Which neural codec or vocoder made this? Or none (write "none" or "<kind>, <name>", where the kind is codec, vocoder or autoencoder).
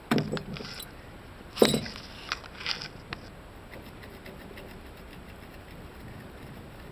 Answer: none